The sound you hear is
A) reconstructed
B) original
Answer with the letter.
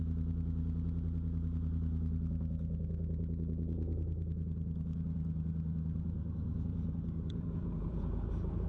A